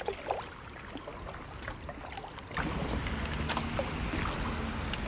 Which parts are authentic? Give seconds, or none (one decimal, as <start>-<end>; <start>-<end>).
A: 0.0-5.1